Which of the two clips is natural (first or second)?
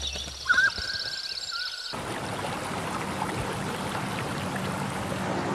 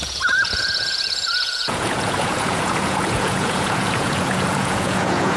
first